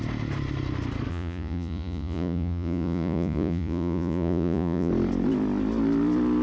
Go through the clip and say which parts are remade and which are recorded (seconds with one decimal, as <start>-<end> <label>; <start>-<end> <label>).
0.0-1.1 recorded; 1.1-4.9 remade; 4.9-6.4 recorded